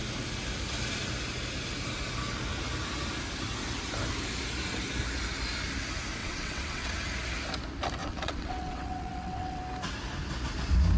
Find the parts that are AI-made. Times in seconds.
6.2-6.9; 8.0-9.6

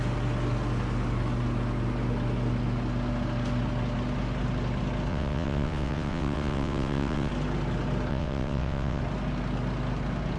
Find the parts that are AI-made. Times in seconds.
5.1-7.3; 8.1-9.0